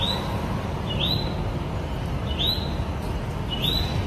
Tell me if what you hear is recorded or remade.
recorded